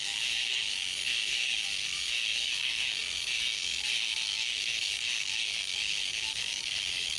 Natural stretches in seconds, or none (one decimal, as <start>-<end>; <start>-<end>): none